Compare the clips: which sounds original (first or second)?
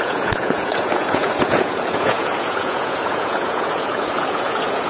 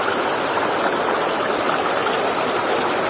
second